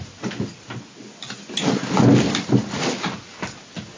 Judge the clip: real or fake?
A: real